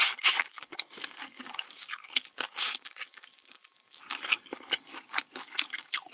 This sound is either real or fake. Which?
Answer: fake